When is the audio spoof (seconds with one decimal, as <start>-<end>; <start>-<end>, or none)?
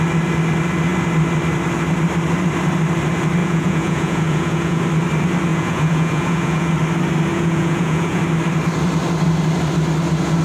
3.4-4.8; 5.5-6.7; 7.3-8.2